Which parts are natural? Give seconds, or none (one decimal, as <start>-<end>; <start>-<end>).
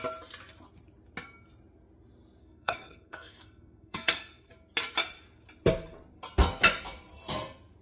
0.0-2.4; 4.5-7.8